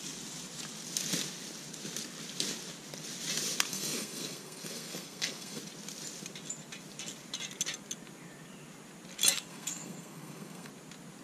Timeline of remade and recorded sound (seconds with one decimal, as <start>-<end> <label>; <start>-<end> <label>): 0.0-3.7 recorded; 3.7-5.6 remade; 5.6-9.5 recorded; 9.5-10.7 remade; 10.7-11.2 recorded